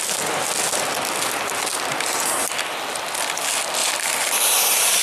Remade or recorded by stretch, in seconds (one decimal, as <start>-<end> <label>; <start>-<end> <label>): 0.0-3.8 recorded; 3.8-4.3 remade; 4.3-5.0 recorded